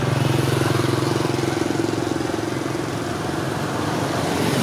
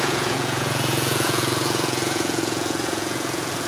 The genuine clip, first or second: first